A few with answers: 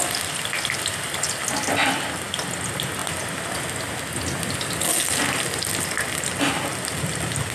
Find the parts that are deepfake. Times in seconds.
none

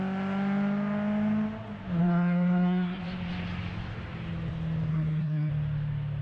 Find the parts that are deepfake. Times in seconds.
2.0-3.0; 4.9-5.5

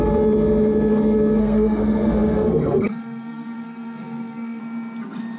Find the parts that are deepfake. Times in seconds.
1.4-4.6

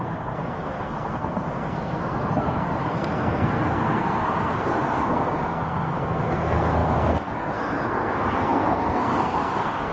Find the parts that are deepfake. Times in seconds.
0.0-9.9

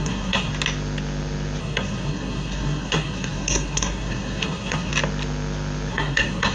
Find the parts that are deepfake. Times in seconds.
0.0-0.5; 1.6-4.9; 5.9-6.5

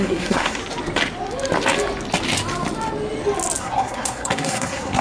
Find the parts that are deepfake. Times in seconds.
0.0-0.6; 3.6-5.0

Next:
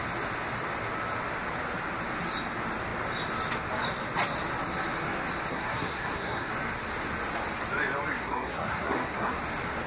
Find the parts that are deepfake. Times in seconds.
5.5-6.5; 8.1-9.4

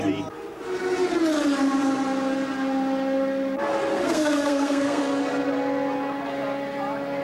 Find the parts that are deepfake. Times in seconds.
3.9-5.0